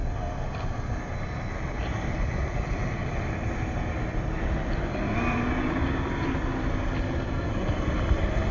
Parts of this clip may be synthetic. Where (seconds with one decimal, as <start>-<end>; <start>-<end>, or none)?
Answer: none